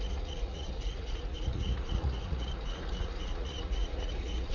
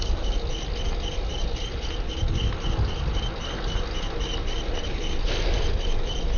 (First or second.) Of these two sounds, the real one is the second